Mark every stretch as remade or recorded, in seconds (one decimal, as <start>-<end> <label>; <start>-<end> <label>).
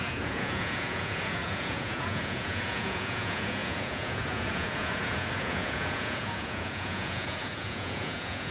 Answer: 0.0-8.5 remade